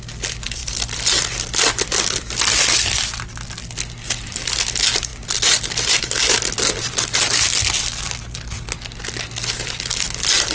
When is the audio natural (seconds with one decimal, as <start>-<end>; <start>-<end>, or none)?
0.0-10.5